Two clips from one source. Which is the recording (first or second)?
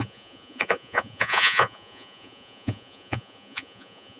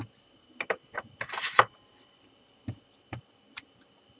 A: second